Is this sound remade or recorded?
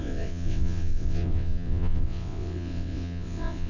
remade